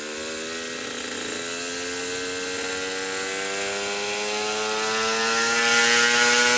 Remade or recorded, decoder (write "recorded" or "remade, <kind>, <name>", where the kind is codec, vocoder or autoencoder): recorded